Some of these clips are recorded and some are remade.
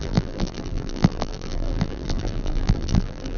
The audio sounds remade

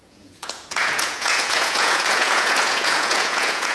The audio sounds remade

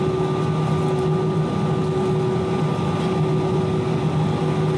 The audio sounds recorded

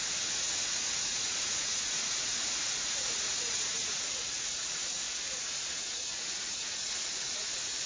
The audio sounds remade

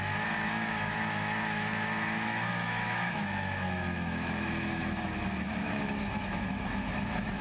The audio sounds remade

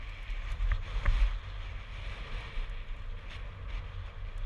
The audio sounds recorded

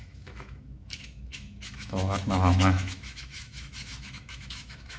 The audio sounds remade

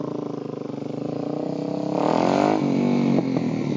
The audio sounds recorded